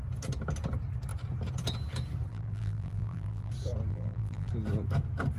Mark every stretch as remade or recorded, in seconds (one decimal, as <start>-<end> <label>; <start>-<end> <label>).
0.0-2.3 recorded; 2.3-3.5 remade; 3.5-3.9 recorded; 3.9-4.5 remade; 4.5-5.4 recorded